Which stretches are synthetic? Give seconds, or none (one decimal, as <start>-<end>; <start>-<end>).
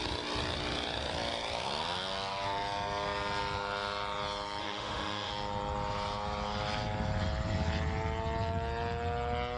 4.6-5.3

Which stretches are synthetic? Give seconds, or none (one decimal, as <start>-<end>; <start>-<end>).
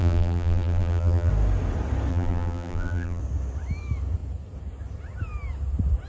0.0-1.3; 2.1-3.2